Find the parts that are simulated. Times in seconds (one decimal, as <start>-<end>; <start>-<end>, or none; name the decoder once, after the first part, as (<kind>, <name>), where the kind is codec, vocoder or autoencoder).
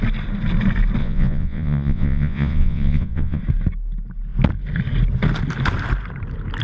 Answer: 1.0-3.4 (vocoder, Vocos)